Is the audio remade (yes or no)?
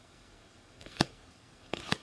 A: yes